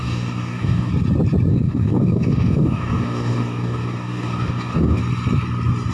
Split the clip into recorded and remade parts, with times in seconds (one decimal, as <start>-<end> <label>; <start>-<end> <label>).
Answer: 0.0-0.9 remade; 0.9-1.5 recorded; 1.5-5.0 remade; 5.0-5.9 recorded